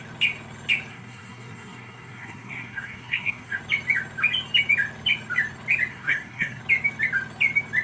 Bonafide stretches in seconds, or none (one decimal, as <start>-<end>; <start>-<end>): 0.0-0.9; 3.6-5.9; 6.6-7.8